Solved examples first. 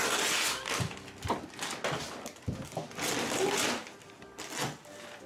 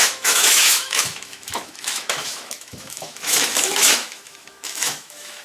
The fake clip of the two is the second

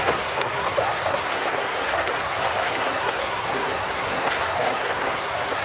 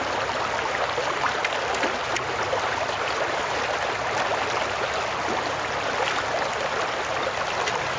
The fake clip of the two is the first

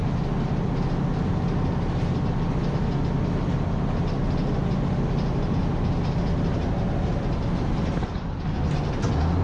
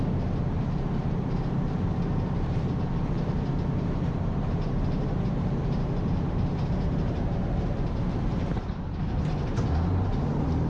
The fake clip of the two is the second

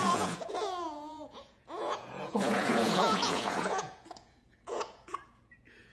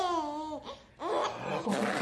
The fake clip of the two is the first